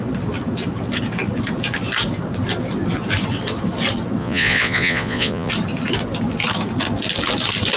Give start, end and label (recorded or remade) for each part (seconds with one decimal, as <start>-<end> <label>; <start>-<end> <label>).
0.0-4.2 recorded; 4.2-5.5 remade; 5.5-7.8 recorded